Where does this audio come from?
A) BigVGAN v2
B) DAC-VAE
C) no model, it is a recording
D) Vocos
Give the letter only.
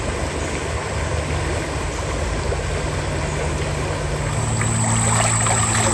C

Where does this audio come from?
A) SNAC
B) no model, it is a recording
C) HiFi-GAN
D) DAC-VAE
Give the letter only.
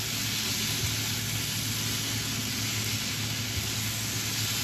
B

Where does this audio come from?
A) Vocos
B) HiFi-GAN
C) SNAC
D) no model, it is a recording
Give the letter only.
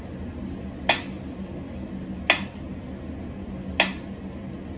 D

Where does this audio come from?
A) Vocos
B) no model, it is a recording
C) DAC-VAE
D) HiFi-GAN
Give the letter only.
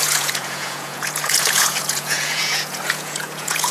A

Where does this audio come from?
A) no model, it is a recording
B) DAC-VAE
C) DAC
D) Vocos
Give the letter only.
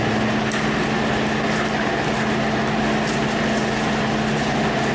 A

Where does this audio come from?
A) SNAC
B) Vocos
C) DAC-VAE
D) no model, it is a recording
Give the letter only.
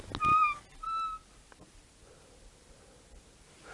D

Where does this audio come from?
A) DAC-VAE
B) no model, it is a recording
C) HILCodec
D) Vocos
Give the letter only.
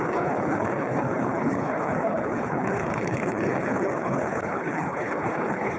C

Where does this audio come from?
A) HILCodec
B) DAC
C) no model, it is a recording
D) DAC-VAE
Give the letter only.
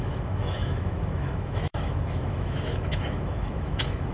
D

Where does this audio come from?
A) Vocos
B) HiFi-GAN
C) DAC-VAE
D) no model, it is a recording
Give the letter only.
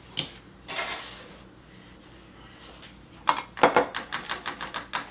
D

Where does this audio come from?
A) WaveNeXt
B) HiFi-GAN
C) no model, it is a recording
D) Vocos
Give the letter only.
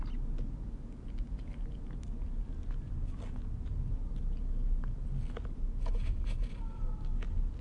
C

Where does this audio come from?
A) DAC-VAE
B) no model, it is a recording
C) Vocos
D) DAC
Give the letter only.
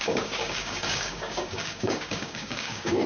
D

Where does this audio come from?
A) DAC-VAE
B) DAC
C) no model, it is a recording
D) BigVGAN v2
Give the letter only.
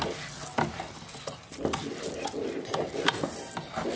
C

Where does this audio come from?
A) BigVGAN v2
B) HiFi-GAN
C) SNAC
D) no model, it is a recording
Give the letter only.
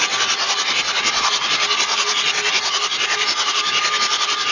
D